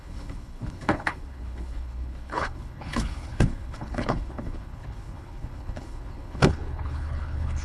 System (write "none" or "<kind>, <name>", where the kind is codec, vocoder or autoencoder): codec, HILCodec